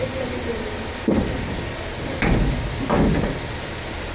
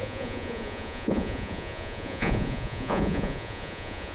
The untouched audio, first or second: first